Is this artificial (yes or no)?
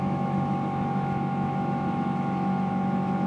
yes